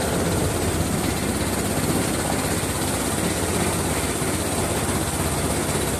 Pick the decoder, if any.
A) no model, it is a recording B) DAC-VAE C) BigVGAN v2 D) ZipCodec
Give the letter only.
A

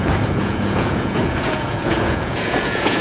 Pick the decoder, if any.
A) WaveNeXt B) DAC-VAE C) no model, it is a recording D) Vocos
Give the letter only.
D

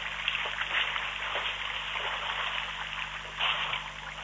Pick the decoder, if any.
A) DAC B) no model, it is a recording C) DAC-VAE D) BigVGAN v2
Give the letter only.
B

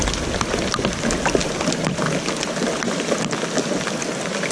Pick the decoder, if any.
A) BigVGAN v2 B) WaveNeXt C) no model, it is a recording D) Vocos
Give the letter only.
C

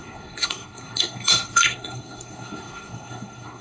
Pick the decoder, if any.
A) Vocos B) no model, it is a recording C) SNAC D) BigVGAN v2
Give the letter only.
C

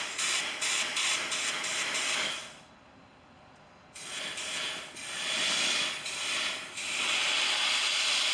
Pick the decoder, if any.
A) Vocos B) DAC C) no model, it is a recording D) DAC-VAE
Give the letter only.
C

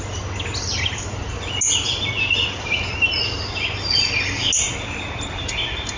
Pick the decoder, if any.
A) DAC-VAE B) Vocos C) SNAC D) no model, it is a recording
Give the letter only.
D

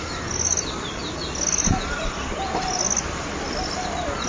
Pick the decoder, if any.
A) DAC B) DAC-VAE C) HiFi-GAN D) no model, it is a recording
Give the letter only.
D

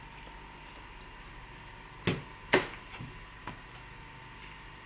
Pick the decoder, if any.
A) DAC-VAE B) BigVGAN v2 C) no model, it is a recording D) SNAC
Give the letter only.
C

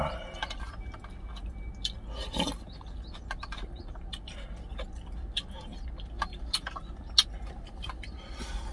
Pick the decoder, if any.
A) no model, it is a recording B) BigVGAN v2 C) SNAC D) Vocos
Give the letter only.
A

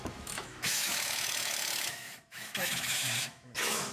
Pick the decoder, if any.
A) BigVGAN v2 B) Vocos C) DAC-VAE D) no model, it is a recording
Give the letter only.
C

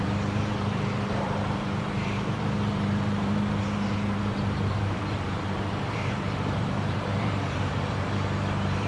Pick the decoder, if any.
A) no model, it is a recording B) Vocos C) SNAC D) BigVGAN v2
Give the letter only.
D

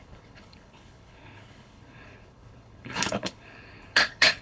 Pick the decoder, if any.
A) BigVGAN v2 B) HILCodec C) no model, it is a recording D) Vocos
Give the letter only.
B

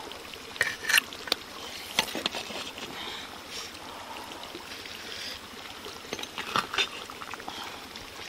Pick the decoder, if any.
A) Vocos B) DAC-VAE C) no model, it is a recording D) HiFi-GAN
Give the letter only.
C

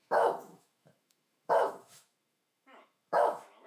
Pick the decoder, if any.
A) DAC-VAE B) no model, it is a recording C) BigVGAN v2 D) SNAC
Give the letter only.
A